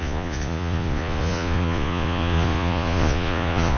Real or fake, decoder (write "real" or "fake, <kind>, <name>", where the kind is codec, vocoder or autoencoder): fake, vocoder, Vocos